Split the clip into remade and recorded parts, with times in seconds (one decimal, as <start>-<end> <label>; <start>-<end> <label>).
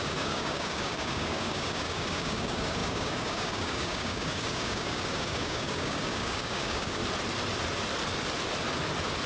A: 0.0-7.0 remade; 7.0-9.3 recorded